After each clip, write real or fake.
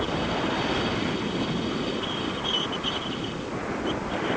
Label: real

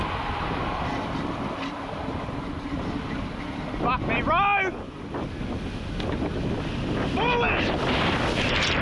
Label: real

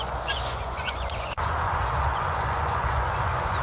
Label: fake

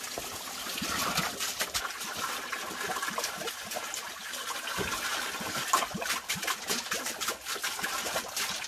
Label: fake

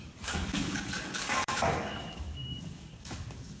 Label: fake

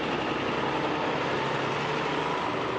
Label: real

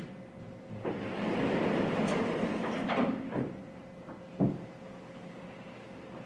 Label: real